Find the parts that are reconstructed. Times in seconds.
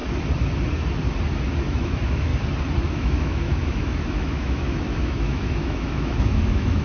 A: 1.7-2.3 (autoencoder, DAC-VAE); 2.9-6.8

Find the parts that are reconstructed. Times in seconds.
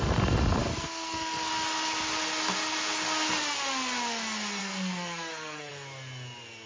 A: 0.6-1.5 (codec, SNAC); 4.6-5.7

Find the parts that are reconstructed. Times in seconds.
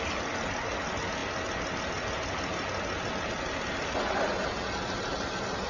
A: none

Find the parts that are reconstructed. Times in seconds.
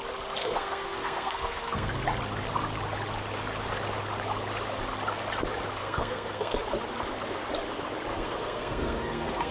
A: 0.4-1.9 (codec, SNAC); 5.8-6.6; 8.1-9.5